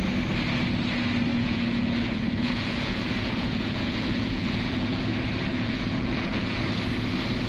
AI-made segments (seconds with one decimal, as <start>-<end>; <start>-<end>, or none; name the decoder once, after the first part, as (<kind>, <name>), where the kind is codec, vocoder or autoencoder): 1.3-5.0 (vocoder, Vocos); 5.5-6.6